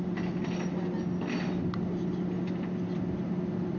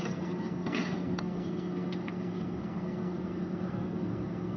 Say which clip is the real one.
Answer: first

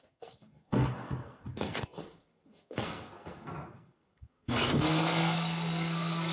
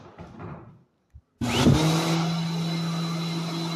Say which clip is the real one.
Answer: second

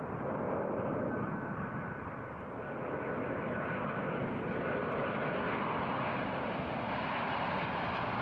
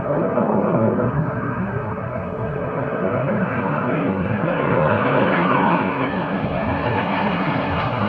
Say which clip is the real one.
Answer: first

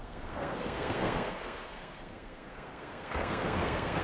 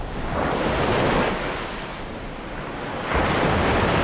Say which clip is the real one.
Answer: second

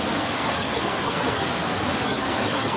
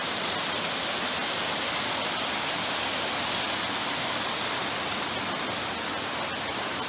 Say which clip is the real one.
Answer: second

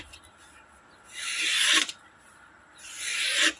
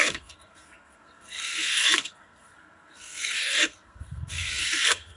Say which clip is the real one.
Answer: first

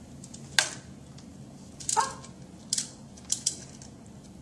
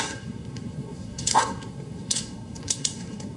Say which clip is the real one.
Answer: first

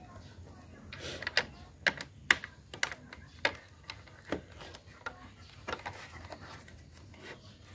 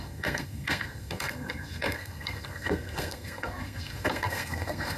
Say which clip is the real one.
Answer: first